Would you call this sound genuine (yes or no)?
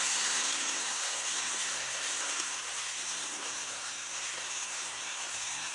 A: no